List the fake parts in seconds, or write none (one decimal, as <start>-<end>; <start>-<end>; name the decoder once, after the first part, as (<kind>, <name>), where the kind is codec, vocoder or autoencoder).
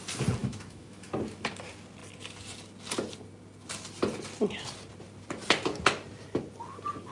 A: 0.4-1.1 (autoencoder, DAC-VAE)